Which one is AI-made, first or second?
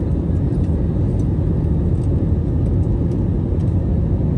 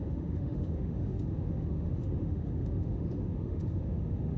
second